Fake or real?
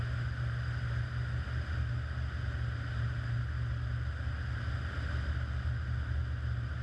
real